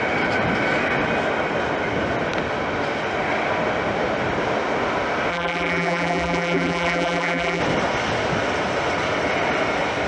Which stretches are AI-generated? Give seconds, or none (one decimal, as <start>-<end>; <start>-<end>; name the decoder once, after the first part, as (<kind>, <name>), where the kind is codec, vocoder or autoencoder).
5.3-7.6 (vocoder, BigVGAN v2)